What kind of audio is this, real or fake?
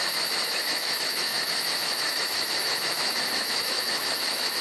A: fake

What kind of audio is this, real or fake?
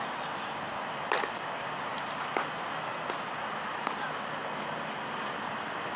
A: real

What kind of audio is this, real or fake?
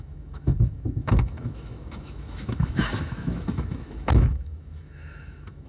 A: fake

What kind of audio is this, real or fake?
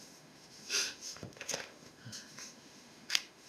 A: fake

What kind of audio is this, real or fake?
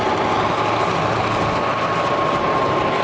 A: real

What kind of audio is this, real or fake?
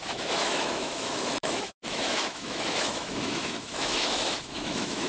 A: fake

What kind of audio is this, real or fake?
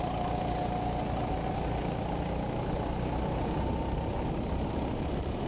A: real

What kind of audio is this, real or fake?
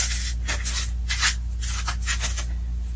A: real